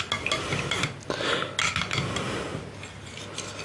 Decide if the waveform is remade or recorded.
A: recorded